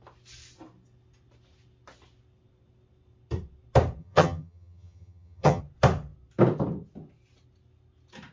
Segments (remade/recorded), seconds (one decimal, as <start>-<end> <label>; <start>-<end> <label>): 0.0-4.0 recorded; 4.0-5.6 remade; 5.6-8.3 recorded